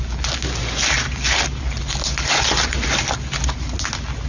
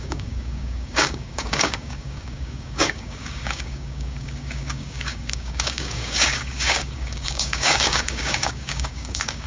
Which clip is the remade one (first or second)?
second